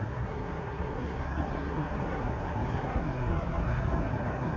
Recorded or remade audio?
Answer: remade